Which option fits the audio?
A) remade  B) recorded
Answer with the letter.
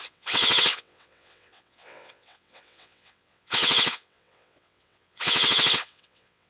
A